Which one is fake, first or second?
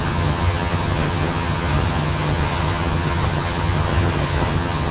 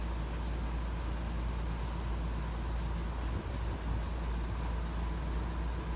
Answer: first